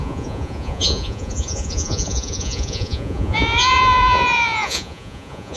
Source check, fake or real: fake